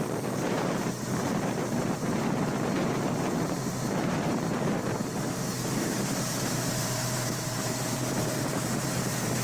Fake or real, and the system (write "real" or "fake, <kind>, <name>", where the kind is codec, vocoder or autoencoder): fake, vocoder, BigVGAN v2